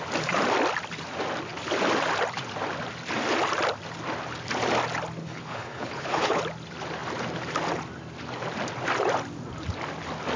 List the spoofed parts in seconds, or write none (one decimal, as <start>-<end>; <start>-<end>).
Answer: 5.2-6.4